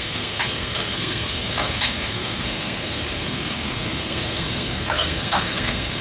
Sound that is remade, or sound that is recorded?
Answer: remade